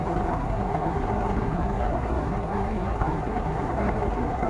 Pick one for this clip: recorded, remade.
remade